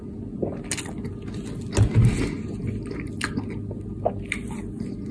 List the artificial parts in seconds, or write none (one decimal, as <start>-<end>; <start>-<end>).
none